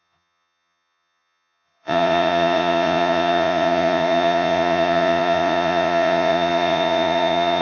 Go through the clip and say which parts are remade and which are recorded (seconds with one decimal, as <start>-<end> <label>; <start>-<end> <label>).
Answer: 0.0-7.6 remade